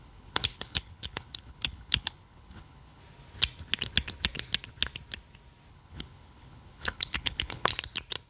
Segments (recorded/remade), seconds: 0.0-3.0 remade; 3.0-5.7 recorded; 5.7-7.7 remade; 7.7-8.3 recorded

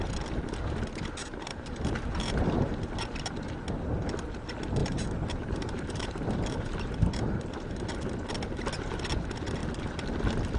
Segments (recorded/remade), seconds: 0.0-1.2 recorded; 1.2-2.8 remade; 2.8-4.8 recorded; 4.8-7.7 remade; 7.7-10.6 recorded

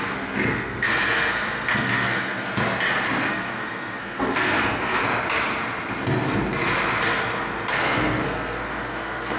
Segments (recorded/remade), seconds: 0.0-2.5 remade; 2.5-3.3 recorded; 3.3-5.0 remade; 5.0-7.7 recorded; 7.7-9.4 remade

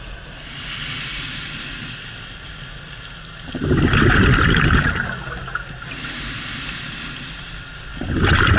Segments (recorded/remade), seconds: 0.0-8.6 recorded

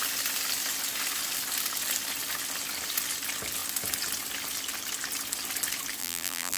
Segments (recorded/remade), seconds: 0.0-6.0 recorded; 6.0-6.6 remade

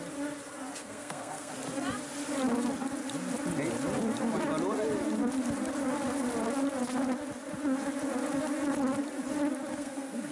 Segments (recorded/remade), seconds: 0.0-0.8 recorded; 0.8-1.5 remade; 1.5-9.7 recorded; 9.7-10.3 remade